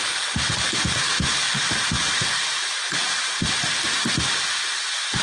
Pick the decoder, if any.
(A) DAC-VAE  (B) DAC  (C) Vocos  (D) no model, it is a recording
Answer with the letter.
D